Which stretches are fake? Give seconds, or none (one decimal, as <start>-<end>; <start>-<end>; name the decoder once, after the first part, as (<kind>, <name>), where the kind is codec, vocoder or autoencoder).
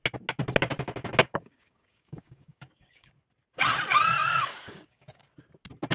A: 1.2-3.1 (codec, DAC); 4.2-5.3